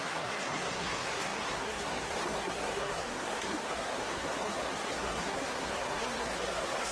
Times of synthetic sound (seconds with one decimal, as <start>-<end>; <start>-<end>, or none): 0.0-6.9